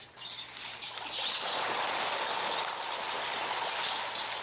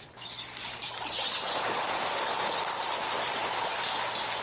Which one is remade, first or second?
second